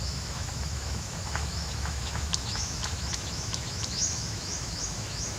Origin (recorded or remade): remade